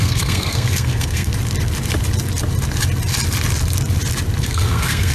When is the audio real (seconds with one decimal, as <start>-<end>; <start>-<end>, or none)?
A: 1.3-4.4